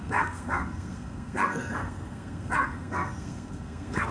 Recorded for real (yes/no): no